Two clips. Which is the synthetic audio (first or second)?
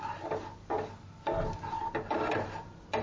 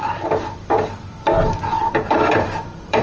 second